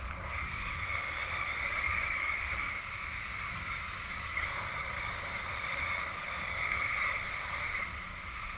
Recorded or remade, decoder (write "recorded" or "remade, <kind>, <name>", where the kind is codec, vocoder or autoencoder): remade, codec, DAC